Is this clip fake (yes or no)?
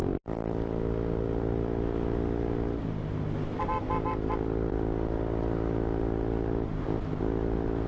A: no